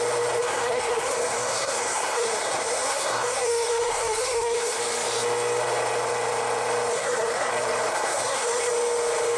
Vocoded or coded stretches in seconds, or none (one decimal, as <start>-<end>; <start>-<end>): 0.4-4.8; 6.9-7.5; 7.9-8.7

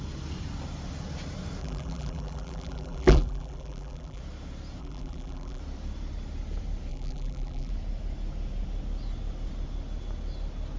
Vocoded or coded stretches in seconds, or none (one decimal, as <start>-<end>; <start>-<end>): 1.6-4.2; 4.8-5.6; 6.9-7.7

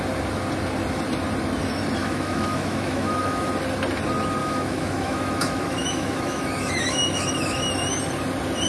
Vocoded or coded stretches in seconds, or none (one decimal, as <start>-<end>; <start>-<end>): 2.0-3.5; 4.4-7.7

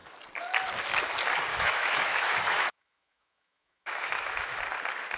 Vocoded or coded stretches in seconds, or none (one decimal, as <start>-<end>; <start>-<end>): 1.5-4.6

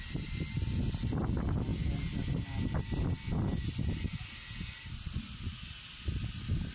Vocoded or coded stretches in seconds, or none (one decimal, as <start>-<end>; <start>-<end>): none

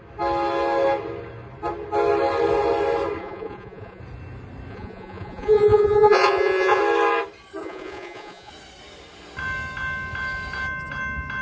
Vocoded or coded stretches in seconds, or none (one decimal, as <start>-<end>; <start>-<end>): 3.2-4.0; 4.7-6.8; 7.6-8.5

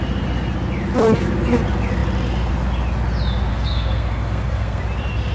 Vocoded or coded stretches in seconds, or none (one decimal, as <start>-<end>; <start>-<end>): 3.5-4.8

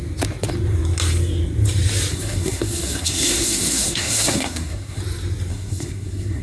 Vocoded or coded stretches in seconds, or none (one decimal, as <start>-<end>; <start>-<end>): 2.1-5.0; 5.5-6.4